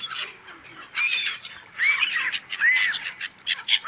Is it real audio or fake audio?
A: fake